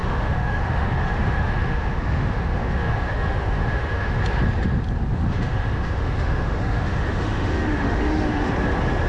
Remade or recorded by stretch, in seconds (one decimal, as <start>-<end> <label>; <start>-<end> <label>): 0.0-4.1 remade; 4.1-5.1 recorded; 5.1-8.5 remade; 8.5-9.1 recorded